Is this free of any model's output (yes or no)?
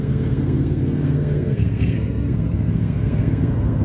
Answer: no